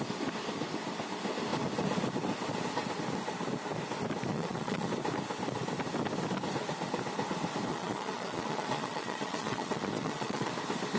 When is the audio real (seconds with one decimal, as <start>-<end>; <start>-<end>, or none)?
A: 0.0-4.3; 4.9-7.7; 10.5-11.0